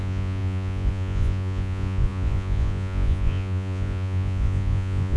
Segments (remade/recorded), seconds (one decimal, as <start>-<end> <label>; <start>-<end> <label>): 0.0-5.2 remade

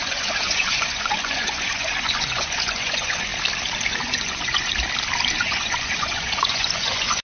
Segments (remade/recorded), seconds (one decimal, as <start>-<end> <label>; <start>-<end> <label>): 0.0-3.3 remade; 3.3-3.9 recorded; 3.9-4.7 remade; 4.7-5.5 recorded; 5.5-7.2 remade

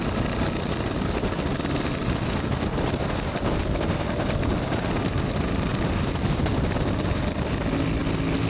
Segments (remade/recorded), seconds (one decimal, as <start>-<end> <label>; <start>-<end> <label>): 0.0-8.5 recorded